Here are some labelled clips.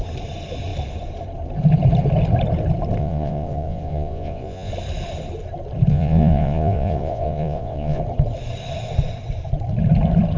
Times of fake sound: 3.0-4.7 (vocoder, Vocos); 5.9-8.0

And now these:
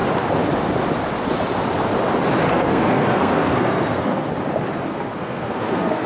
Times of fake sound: 2.5-4.3 (codec, SNAC); 4.9-6.1

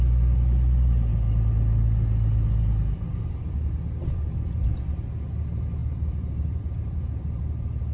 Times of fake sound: 5.8-7.4 (vocoder, BigVGAN v2)

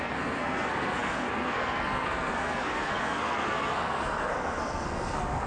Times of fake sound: 0.0-5.5 (codec, SNAC)

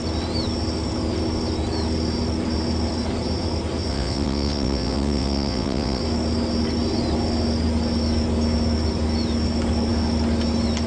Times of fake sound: 3.9-6.0 (vocoder, WaveNeXt)